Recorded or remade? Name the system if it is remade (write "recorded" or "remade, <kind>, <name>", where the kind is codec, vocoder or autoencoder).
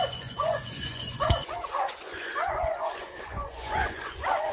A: remade, vocoder, Vocos